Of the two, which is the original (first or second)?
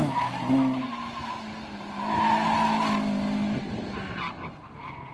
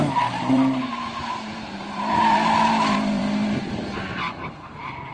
first